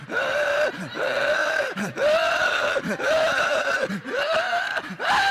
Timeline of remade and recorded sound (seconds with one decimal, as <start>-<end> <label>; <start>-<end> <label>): 0.0-5.3 remade